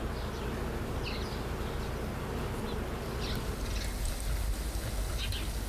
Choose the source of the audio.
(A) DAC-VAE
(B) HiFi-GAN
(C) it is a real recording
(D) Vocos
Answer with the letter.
C